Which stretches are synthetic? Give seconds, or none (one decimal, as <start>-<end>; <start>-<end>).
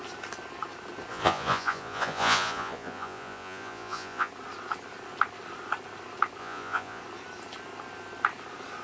1.1-4.3; 6.4-7.0